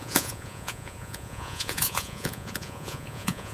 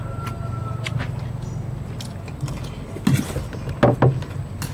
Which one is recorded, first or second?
second